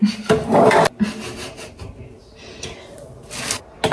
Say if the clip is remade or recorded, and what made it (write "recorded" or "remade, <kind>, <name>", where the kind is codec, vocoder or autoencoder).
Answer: recorded